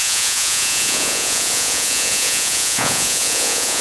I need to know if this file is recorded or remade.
remade